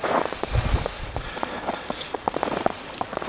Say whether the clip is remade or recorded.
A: remade